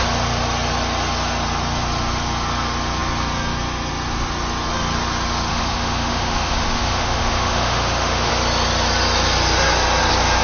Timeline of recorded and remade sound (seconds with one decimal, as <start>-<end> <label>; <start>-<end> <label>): 0.0-5.5 recorded; 5.5-8.3 remade; 8.3-10.4 recorded